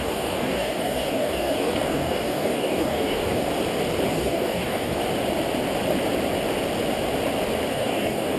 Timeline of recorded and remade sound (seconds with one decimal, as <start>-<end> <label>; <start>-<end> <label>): 0.0-3.5 remade; 3.5-4.1 recorded; 4.1-5.0 remade; 5.0-7.7 recorded; 7.7-8.4 remade

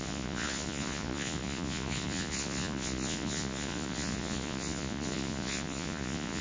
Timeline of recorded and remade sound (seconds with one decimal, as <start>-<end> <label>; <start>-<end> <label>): 0.0-6.4 remade